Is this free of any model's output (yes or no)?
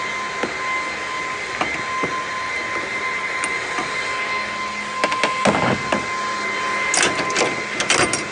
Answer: yes